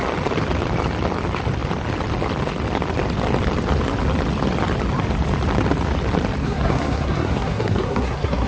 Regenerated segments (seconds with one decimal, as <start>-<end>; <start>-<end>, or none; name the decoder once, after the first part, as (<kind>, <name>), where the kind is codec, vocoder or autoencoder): 6.4-8.5 (codec, SNAC)